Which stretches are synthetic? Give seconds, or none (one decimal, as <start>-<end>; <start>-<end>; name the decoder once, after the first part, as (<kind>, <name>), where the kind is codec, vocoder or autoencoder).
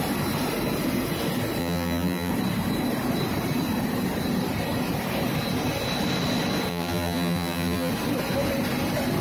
1.6-2.3 (vocoder, BigVGAN v2); 6.7-7.9